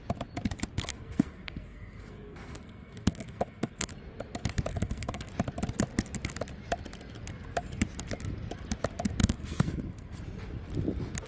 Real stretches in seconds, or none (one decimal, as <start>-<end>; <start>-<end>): 0.0-0.9; 3.9-4.7; 5.3-9.2; 10.2-11.3